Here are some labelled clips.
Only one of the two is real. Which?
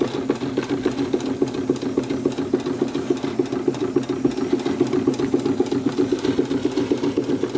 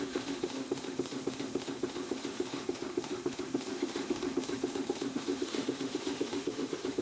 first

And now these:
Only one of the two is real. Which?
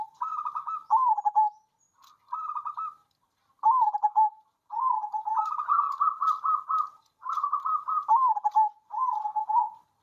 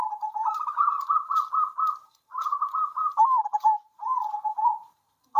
first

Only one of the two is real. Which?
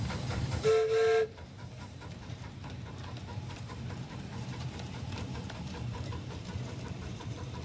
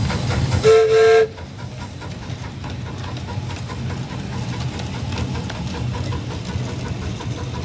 second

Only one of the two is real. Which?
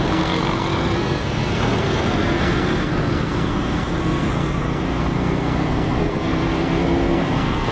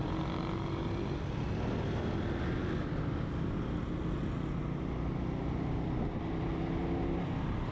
second